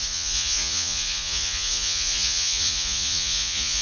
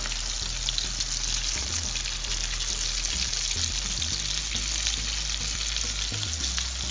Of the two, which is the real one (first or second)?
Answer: second